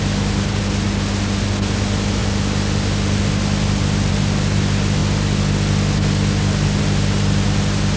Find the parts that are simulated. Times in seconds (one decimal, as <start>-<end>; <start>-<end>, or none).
none